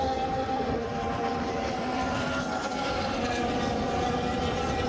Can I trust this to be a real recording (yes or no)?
no